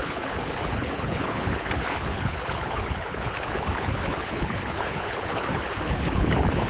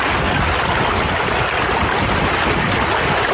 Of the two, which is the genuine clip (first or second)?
second